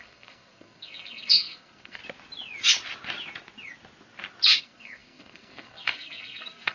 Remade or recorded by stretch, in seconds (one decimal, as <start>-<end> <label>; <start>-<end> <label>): 0.0-2.0 remade; 2.0-4.6 recorded; 4.6-6.7 remade